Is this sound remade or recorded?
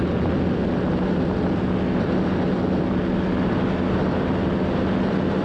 recorded